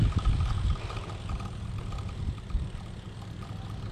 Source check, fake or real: real